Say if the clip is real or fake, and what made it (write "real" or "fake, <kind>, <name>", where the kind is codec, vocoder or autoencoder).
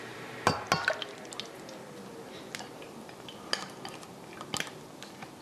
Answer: real